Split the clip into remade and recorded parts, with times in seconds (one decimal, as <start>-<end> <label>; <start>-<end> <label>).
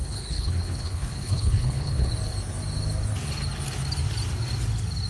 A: 0.0-2.1 remade; 2.1-5.1 recorded